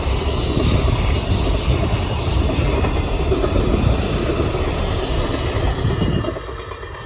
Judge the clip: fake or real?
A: real